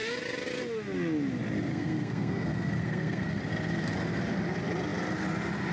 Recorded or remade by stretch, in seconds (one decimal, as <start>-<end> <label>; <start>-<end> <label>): 0.0-1.7 recorded; 1.7-3.4 remade; 3.4-5.7 recorded